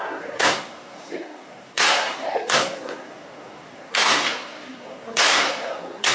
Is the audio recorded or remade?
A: remade